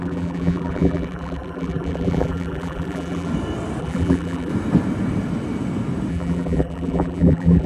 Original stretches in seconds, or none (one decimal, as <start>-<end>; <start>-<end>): 3.3-3.8; 4.5-6.1